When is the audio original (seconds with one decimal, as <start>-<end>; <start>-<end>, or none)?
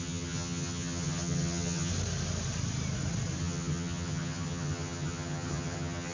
1.9-3.4